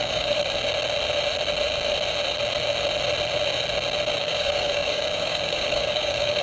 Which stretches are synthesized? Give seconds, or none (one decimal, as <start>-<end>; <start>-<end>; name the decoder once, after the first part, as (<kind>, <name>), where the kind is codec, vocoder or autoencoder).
0.0-0.4 (codec, DAC); 4.2-6.4